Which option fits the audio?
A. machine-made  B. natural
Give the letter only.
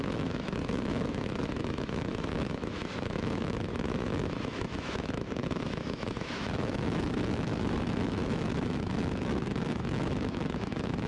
A